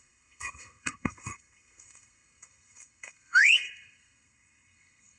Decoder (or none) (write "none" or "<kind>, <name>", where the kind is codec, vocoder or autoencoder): codec, SNAC